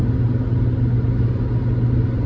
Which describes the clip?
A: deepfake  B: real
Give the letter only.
B